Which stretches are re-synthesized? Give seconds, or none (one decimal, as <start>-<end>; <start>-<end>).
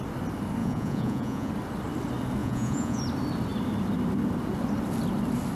0.6-1.5; 2.4-3.0